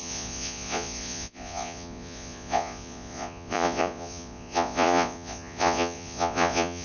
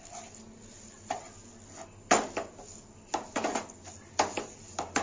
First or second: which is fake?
first